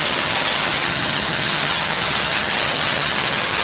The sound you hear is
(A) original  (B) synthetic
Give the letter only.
B